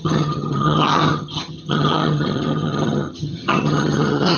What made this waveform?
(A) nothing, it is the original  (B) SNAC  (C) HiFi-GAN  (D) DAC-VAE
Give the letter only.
C